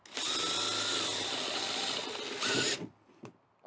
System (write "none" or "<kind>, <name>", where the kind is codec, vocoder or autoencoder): none